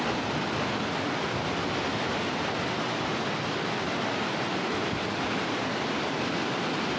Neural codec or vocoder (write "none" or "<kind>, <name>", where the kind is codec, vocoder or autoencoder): none